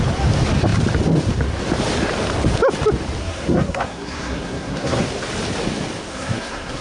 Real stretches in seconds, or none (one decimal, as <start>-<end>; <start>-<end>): 0.0-3.2; 5.0-6.1